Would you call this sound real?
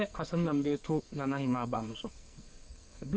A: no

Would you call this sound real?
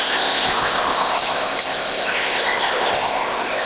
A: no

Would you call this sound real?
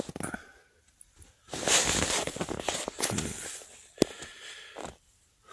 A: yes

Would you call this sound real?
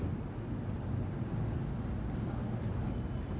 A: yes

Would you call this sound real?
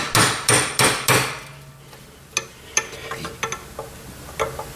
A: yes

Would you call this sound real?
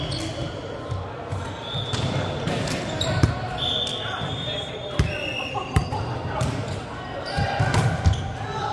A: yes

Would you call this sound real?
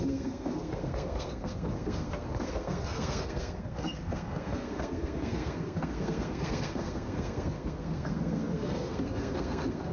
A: no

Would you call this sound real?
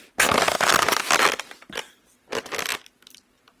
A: yes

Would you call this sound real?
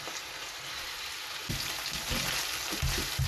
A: yes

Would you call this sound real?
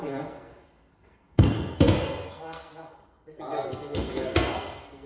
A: no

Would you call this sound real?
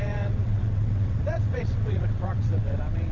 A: no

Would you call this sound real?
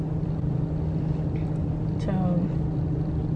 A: yes